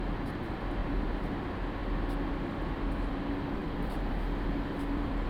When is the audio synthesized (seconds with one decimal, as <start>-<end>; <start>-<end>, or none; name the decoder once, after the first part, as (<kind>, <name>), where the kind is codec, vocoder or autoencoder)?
0.8-1.3 (vocoder, BigVGAN v2); 1.8-3.2; 3.6-5.3